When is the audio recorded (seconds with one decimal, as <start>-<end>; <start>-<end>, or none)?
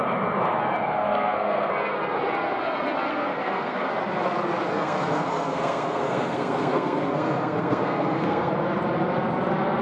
0.0-1.0; 1.7-3.1; 3.9-4.7; 8.5-9.8